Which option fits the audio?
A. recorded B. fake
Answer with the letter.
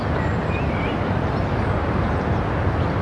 A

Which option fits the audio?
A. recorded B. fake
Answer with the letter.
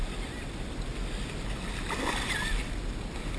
A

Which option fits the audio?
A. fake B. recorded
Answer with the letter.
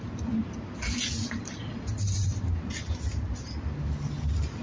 B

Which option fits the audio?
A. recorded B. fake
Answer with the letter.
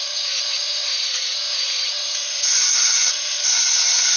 B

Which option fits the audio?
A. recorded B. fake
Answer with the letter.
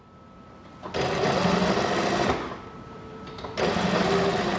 A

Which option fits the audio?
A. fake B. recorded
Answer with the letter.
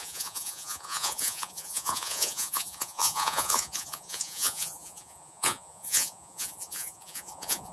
A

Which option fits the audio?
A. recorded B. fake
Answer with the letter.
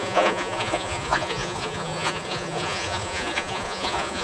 B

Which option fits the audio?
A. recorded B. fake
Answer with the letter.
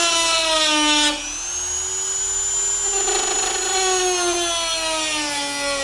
A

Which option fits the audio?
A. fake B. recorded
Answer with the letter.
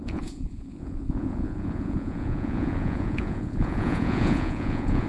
A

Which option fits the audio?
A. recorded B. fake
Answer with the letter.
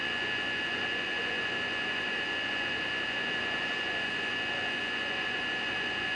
B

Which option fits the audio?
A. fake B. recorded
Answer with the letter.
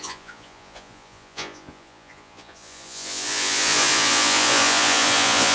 A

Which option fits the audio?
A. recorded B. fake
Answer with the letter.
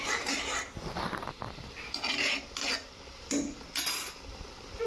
A